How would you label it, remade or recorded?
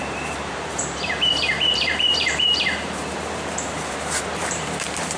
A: remade